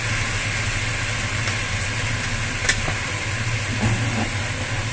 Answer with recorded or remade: recorded